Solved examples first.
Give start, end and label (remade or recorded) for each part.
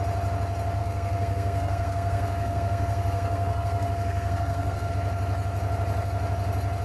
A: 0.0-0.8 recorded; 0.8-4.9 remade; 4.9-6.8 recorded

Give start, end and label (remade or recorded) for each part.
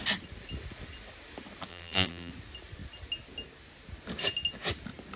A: 0.0-1.7 recorded; 1.7-2.3 remade; 2.3-5.2 recorded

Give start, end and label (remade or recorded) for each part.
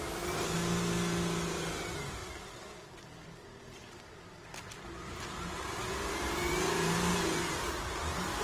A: 0.0-3.8 recorded; 3.8-6.5 remade; 6.5-8.4 recorded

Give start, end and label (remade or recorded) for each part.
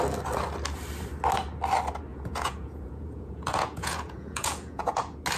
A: 0.0-2.1 recorded; 2.1-5.0 remade; 5.0-5.4 recorded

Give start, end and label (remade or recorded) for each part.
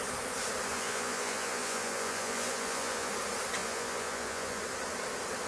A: 0.0-0.7 recorded; 0.7-3.1 remade; 3.1-3.6 recorded; 3.6-4.6 remade; 4.6-5.5 recorded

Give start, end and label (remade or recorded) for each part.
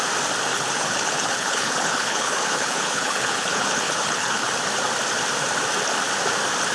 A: 0.0-0.5 recorded; 0.5-4.5 remade; 4.5-6.7 recorded